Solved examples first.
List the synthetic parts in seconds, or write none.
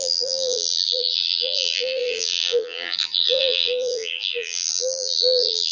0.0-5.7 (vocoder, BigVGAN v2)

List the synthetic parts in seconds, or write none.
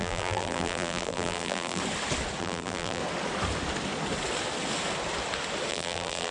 0.0-1.8 (vocoder, BigVGAN v2); 2.4-3.0; 5.7-6.3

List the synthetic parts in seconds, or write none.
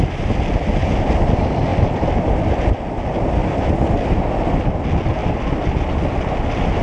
3.4-3.9 (vocoder, BigVGAN v2); 5.2-5.7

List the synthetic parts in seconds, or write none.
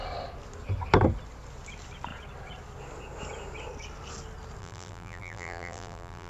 4.6-6.3 (vocoder, BigVGAN v2)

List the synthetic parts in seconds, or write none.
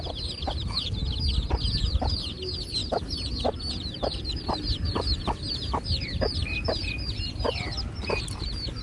0.0-1.0 (vocoder, BigVGAN v2); 1.5-6.8; 8.0-8.8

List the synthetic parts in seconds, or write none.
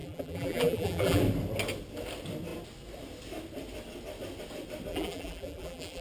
0.0-1.2 (vocoder, BigVGAN v2); 4.9-6.0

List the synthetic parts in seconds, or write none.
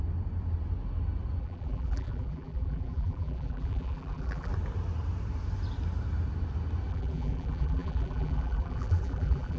1.4-4.5 (vocoder, BigVGAN v2); 6.9-9.6